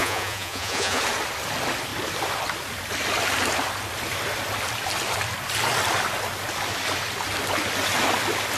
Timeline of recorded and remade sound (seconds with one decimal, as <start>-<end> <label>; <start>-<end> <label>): 0.0-1.0 remade; 1.0-8.6 recorded